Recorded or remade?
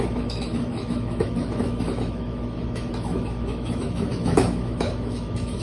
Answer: remade